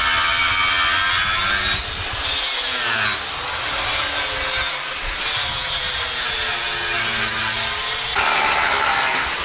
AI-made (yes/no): no